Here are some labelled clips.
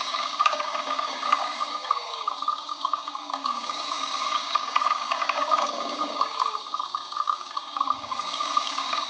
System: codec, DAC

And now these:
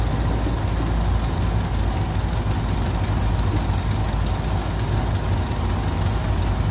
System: none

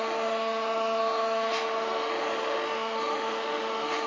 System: autoencoder, DAC-VAE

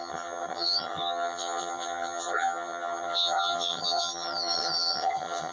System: vocoder, HiFi-GAN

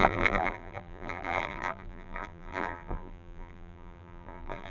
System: vocoder, BigVGAN v2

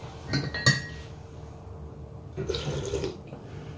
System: none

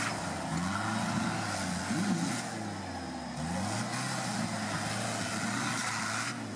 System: none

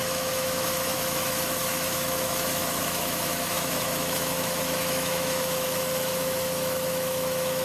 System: autoencoder, DAC-VAE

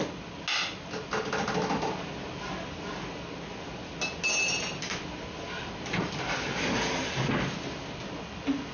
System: none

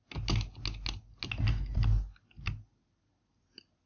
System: none